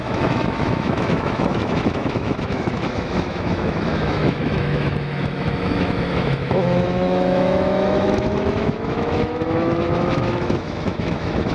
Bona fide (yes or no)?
no